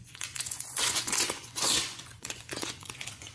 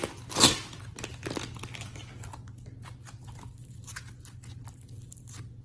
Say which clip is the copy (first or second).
first